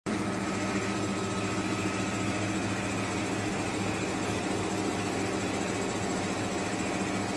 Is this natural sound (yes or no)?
yes